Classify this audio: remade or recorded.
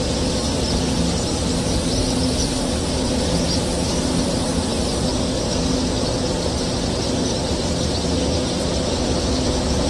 recorded